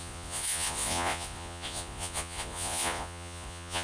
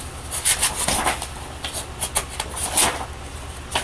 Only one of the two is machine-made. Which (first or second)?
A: first